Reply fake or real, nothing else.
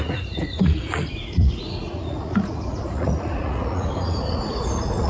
fake